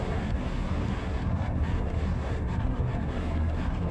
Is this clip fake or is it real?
fake